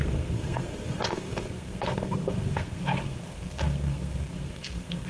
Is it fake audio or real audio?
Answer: fake